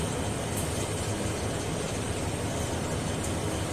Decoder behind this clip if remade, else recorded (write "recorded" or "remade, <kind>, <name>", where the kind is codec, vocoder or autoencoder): recorded